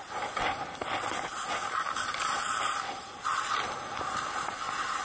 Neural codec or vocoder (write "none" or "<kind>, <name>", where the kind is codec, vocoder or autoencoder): none